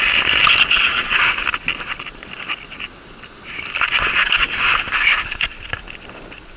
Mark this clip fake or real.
real